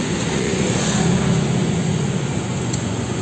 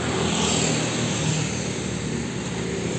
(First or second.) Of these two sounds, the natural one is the second